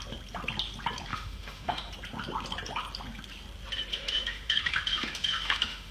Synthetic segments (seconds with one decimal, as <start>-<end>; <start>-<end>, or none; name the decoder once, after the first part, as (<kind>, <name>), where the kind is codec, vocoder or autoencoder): 1.1-1.9 (autoencoder, DAC-VAE); 3.9-5.9